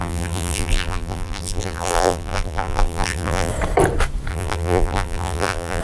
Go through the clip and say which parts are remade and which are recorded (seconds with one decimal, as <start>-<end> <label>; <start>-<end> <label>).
0.0-3.5 remade; 3.5-4.3 recorded; 4.3-5.8 remade